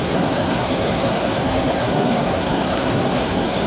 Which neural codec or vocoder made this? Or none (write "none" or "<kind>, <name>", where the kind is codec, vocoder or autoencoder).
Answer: codec, SNAC